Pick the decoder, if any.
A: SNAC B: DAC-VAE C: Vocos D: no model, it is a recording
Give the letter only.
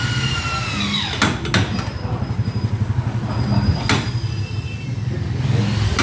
D